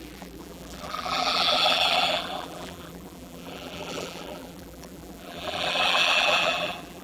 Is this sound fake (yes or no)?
yes